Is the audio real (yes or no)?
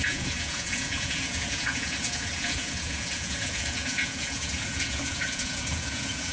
no